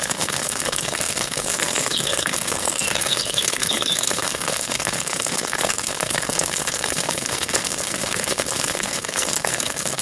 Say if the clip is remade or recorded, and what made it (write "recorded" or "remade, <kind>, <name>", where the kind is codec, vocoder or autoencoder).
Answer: remade, codec, SNAC